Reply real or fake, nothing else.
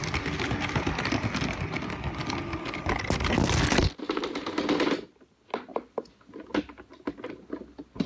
real